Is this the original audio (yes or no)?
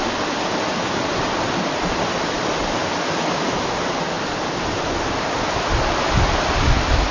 yes